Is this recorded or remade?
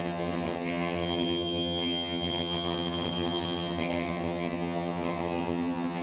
remade